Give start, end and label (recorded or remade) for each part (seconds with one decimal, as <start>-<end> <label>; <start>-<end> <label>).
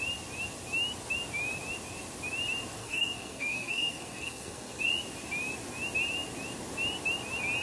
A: 0.0-2.8 recorded; 2.8-4.8 remade; 4.8-7.6 recorded